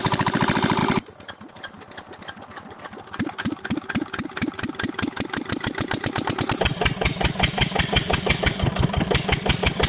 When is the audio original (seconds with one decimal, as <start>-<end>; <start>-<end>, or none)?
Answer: none